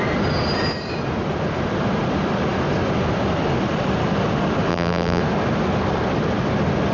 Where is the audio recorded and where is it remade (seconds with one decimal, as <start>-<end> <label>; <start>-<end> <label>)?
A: 0.0-4.7 recorded; 4.7-5.2 remade; 5.2-6.9 recorded